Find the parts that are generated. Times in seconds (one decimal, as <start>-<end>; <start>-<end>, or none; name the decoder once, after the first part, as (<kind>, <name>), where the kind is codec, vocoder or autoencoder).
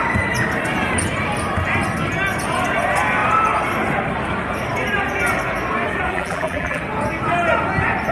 6.1-6.8 (vocoder, BigVGAN v2)